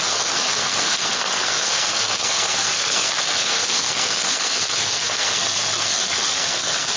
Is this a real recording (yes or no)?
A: no